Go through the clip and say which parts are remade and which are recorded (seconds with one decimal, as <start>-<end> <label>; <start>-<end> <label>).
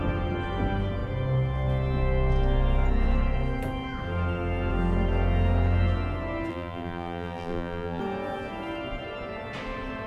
0.0-6.5 recorded; 6.5-8.0 remade; 8.0-10.1 recorded